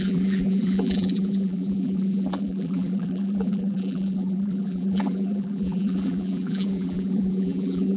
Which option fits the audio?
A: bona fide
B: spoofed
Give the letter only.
B